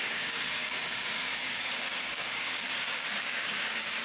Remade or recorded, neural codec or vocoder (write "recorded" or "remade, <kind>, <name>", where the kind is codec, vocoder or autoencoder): remade, codec, DAC